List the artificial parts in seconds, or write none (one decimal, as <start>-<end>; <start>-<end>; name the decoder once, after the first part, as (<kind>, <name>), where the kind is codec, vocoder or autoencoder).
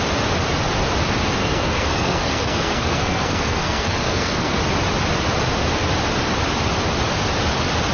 1.4-4.6 (codec, SNAC)